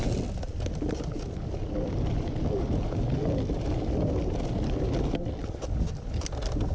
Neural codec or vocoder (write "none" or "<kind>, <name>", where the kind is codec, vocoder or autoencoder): none